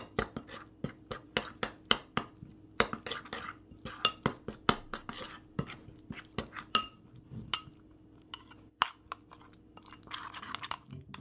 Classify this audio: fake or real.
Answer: real